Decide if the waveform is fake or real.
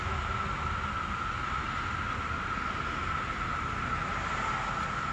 real